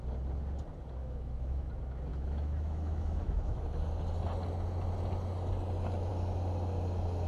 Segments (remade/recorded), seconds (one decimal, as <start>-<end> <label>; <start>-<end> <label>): 0.0-1.0 recorded; 1.0-1.7 remade; 1.7-2.1 recorded; 2.1-3.6 remade; 3.6-7.3 recorded